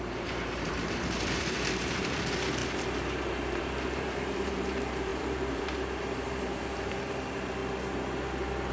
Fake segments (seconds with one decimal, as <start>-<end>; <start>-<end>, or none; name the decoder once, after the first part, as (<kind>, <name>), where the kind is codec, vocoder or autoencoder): 0.0-7.6 (vocoder, BigVGAN v2)